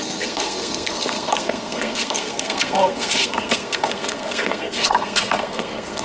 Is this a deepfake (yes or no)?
yes